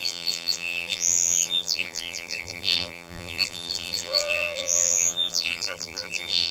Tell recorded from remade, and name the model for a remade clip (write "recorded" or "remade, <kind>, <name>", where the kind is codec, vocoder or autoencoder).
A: remade, vocoder, BigVGAN v2